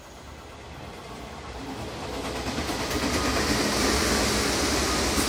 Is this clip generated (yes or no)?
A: no